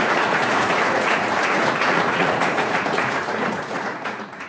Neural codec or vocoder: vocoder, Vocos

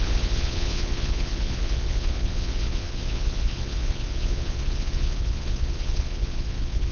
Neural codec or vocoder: vocoder, Vocos